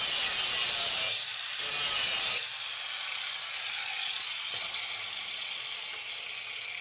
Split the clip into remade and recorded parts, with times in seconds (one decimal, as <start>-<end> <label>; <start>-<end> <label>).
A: 0.0-6.8 recorded